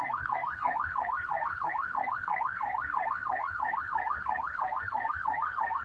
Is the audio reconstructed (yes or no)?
yes